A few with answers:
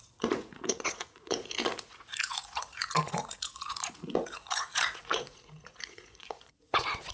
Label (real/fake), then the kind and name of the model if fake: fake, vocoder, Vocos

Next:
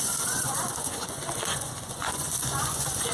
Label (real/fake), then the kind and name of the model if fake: fake, vocoder, Vocos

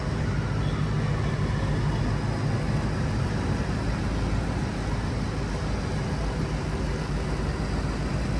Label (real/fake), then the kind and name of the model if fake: real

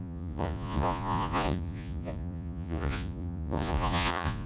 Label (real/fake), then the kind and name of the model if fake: fake, vocoder, Vocos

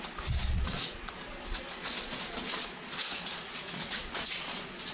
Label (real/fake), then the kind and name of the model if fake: fake, vocoder, Vocos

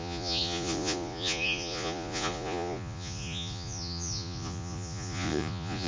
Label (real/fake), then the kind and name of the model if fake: fake, vocoder, Vocos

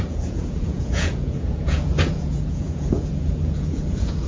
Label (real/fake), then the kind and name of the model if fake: fake, vocoder, Vocos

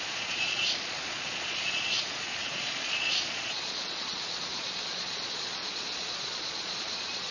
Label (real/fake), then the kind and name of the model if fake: fake, vocoder, Vocos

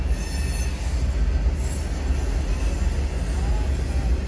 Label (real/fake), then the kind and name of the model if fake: real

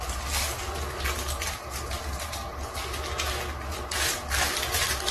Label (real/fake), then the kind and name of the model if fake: real